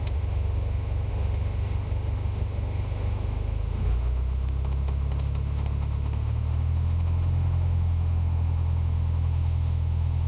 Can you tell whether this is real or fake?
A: fake